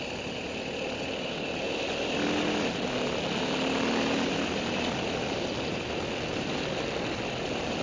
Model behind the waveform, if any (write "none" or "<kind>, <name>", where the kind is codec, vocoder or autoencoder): none